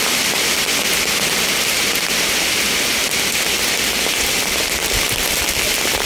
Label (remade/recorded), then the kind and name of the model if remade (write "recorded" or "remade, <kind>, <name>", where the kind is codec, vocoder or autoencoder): recorded